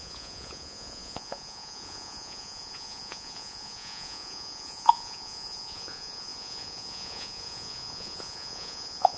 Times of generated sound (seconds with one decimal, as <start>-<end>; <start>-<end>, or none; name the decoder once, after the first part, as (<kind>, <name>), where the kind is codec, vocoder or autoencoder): 0.0-9.2 (vocoder, Vocos)

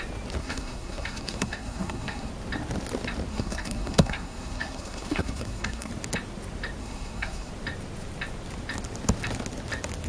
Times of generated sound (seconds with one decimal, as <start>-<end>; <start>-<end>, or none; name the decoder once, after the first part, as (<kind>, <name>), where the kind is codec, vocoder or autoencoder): 0.4-2.3 (codec, SNAC); 3.3-5.9; 6.8-7.5

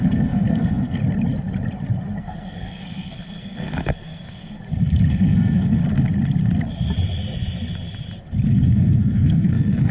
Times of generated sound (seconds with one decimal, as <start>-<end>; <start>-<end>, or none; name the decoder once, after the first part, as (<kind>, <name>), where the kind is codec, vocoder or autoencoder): 0.0-1.0 (codec, SNAC); 2.2-4.6; 5.1-5.8; 8.5-9.9

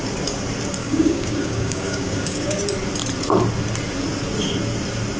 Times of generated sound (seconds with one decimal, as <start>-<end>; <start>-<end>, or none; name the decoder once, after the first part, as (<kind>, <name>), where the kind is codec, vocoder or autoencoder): 0.8-2.6 (codec, DAC)

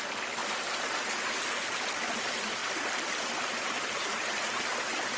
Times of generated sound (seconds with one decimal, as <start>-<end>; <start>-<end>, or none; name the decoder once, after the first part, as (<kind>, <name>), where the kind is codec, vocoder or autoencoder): none

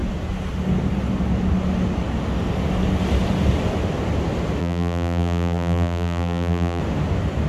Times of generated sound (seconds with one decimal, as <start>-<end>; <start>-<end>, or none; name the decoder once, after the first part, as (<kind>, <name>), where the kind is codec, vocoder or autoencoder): 4.6-6.8 (vocoder, BigVGAN v2)